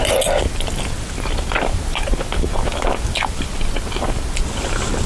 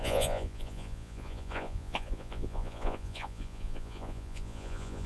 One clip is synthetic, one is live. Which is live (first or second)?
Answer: first